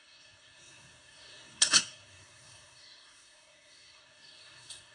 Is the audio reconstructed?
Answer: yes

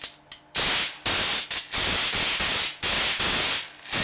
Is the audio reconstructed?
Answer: no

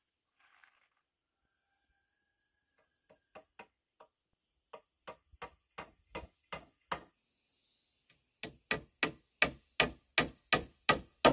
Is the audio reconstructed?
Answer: no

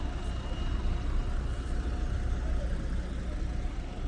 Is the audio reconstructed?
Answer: no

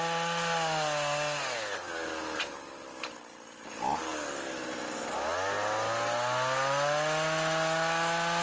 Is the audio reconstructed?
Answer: no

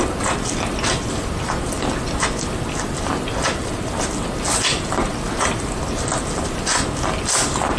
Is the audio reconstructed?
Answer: no